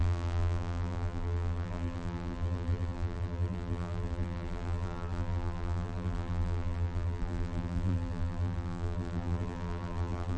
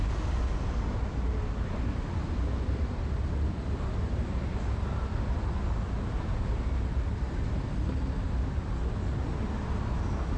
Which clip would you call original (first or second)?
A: second